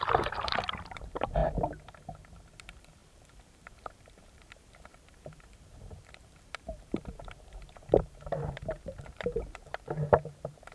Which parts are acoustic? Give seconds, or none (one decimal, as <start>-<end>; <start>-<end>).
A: 1.4-2.6